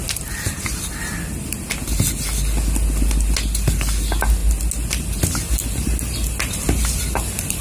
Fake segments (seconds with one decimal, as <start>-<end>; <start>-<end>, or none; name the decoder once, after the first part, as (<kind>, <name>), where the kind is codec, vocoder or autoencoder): none